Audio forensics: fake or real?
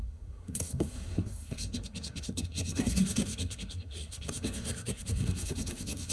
fake